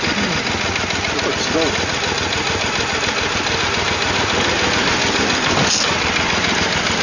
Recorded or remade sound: recorded